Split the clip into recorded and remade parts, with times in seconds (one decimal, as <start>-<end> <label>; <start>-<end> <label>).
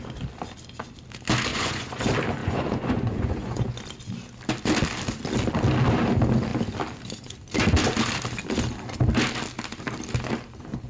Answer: 0.0-1.5 recorded; 1.5-2.0 remade; 2.0-2.4 recorded; 2.4-3.8 remade; 3.8-10.9 recorded